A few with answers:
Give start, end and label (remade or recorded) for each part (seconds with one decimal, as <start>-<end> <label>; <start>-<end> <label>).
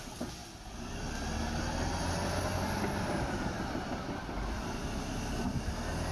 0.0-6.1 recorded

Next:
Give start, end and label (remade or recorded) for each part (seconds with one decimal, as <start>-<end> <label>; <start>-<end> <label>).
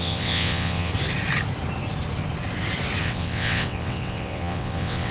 0.0-0.9 remade; 0.9-3.0 recorded; 3.0-5.1 remade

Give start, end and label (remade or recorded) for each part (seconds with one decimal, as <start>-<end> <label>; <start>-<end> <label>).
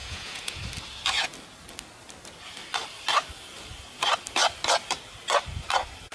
0.0-0.6 remade; 0.6-6.1 recorded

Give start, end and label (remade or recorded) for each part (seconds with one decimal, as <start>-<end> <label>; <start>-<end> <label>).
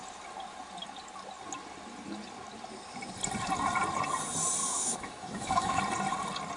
0.0-4.6 recorded; 4.6-5.8 remade; 5.8-6.6 recorded